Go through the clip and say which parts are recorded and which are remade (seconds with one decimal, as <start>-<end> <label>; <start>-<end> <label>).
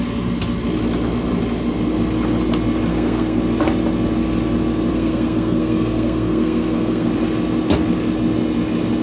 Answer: 0.0-2.9 recorded; 2.9-3.4 remade; 3.4-4.9 recorded; 4.9-7.1 remade; 7.1-9.0 recorded